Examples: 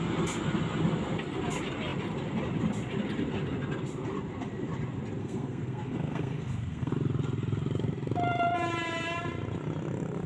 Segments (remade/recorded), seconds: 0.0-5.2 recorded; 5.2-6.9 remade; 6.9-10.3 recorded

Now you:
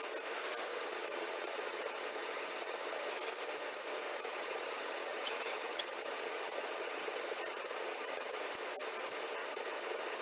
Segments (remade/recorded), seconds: 0.0-0.7 recorded; 0.7-3.1 remade; 3.1-4.1 recorded; 4.1-8.4 remade; 8.4-9.4 recorded; 9.4-10.2 remade

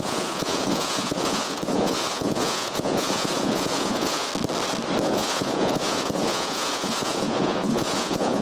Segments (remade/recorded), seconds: 0.0-4.3 remade; 4.3-5.0 recorded; 5.0-8.4 remade

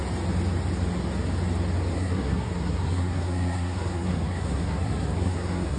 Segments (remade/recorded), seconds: 0.0-1.9 recorded; 1.9-5.8 remade

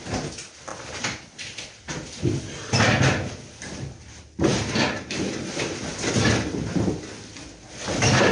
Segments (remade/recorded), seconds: 0.0-0.7 recorded; 0.7-1.7 remade; 1.7-4.5 recorded; 4.5-7.0 remade; 7.0-8.3 recorded